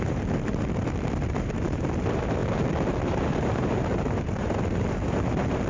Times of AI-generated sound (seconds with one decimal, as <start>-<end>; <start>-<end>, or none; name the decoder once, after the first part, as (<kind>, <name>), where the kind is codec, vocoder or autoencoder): 0.0-2.4 (vocoder, BigVGAN v2); 3.1-5.7